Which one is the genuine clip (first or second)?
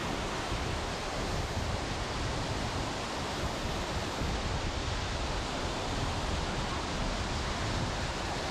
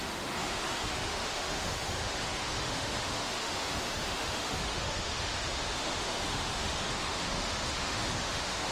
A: first